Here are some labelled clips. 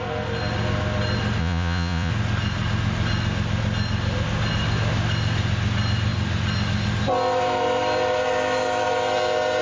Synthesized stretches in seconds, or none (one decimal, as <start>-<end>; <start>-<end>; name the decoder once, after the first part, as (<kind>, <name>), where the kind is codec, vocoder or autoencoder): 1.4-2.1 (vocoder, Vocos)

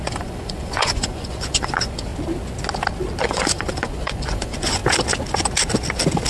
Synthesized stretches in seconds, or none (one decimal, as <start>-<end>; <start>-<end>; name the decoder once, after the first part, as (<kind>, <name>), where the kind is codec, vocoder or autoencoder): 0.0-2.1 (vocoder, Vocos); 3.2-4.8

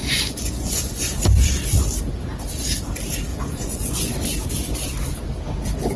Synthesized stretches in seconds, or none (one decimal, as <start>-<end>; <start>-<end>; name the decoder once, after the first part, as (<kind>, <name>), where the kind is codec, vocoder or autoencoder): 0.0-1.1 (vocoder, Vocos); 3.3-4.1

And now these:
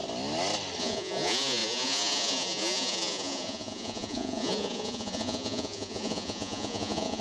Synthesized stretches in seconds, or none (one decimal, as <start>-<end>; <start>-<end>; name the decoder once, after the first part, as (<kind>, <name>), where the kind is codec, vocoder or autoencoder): 0.8-7.2 (vocoder, Vocos)

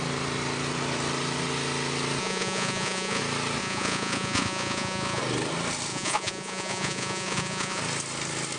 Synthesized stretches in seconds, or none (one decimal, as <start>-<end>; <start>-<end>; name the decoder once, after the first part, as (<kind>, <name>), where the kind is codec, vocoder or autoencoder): 2.2-3.2 (vocoder, Vocos); 3.6-5.2; 5.9-7.8

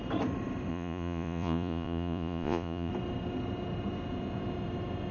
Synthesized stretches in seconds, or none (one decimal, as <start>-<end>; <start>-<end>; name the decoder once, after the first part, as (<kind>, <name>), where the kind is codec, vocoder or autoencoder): 0.7-2.9 (vocoder, Vocos)

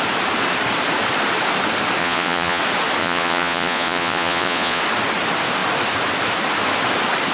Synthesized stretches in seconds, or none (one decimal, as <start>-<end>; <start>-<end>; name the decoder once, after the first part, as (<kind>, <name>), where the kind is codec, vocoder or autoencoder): 2.0-2.6 (vocoder, Vocos); 3.0-4.8

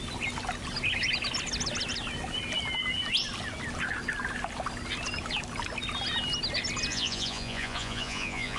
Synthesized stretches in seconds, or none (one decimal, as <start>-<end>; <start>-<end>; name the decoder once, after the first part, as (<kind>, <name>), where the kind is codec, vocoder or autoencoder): 6.9-8.6 (vocoder, Vocos)